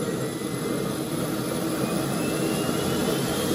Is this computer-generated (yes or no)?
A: no